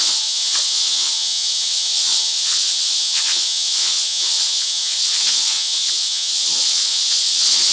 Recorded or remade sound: remade